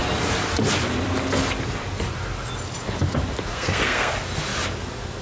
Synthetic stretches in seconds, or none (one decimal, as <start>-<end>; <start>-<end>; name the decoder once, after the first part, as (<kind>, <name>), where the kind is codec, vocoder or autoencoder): 3.5-4.1 (codec, SNAC)